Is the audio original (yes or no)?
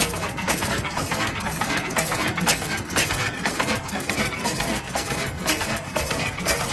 no